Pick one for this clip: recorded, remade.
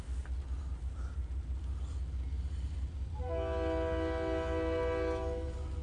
recorded